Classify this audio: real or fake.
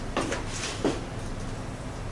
real